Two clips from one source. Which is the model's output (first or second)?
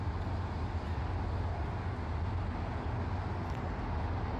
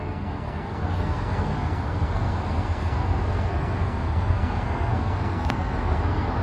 second